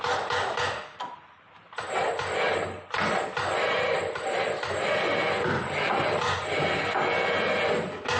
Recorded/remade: recorded